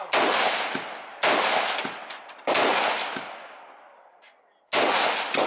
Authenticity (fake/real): real